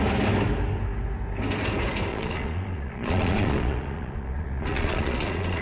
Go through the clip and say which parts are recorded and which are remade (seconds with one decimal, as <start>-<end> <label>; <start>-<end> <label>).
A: 0.0-2.1 recorded; 2.1-5.6 remade

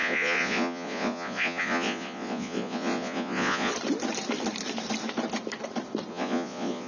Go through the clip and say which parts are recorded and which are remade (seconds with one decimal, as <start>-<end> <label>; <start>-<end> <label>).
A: 0.0-3.7 remade; 3.7-6.1 recorded; 6.1-6.9 remade

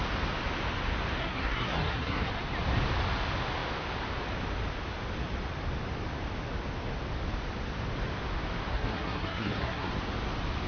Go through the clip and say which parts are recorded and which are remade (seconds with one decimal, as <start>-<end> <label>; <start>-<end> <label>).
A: 0.0-1.2 recorded; 1.2-2.3 remade; 2.3-8.7 recorded; 8.7-9.9 remade; 9.9-10.7 recorded

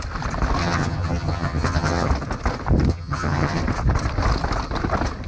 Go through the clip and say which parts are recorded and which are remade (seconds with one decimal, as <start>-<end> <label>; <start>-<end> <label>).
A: 0.0-0.6 recorded; 0.6-2.1 remade; 2.1-2.9 recorded; 2.9-3.6 remade; 3.6-5.3 recorded

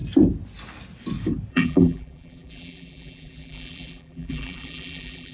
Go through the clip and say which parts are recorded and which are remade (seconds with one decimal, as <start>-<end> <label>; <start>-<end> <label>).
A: 0.0-1.5 recorded; 1.5-5.3 remade